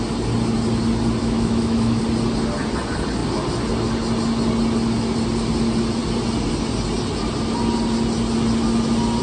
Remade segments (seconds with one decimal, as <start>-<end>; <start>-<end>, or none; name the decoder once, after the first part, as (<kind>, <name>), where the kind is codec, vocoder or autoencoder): 1.2-2.0 (autoencoder, DAC-VAE)